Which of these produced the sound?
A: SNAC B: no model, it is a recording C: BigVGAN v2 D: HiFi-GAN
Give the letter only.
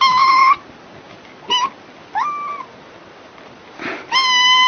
B